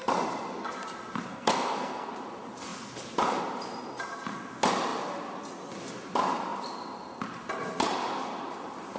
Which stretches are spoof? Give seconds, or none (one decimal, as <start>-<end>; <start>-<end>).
1.3-2.1